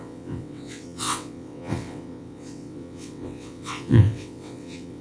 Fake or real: fake